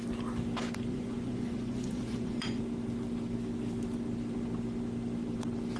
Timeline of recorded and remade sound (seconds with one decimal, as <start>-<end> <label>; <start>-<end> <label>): 0.0-0.9 recorded; 0.9-2.6 remade; 2.6-5.8 recorded

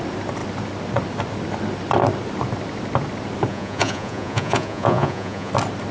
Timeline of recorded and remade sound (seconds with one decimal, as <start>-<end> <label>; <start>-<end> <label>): 0.0-3.5 recorded; 3.5-5.5 remade; 5.5-5.9 recorded

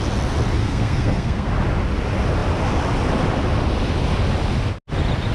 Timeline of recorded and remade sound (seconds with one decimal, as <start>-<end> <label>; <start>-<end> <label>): 0.0-0.6 recorded; 0.6-1.5 remade; 1.5-5.3 recorded

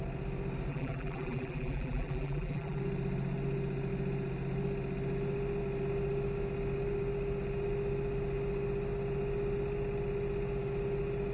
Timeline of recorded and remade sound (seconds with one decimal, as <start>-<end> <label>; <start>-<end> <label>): 0.0-0.7 recorded; 0.7-2.8 remade; 2.8-11.3 recorded

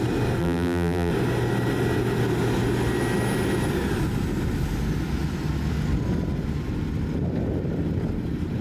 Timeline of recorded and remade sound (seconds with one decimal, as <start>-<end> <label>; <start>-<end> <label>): 0.0-0.4 recorded; 0.4-1.1 remade; 1.1-8.6 recorded

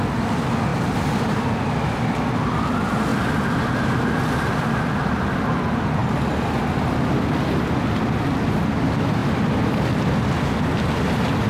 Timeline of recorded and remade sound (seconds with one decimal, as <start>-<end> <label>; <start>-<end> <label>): 0.0-11.5 recorded

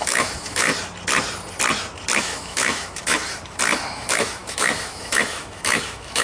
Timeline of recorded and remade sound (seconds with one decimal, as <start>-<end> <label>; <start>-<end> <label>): 0.0-0.7 remade; 0.7-2.2 recorded; 2.2-3.2 remade; 3.2-3.9 recorded; 3.9-6.2 remade